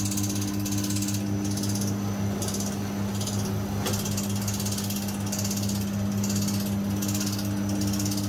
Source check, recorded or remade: recorded